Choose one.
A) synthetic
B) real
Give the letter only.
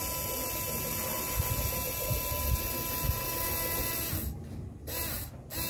B